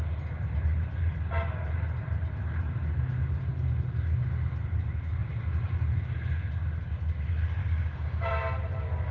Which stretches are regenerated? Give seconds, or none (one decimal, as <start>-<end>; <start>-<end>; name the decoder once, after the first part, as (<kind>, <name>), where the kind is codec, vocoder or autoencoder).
7.6-8.3 (codec, DAC)